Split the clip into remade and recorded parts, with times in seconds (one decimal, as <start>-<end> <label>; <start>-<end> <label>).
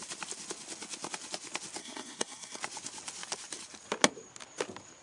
0.0-1.8 recorded; 1.8-2.6 remade; 2.6-5.0 recorded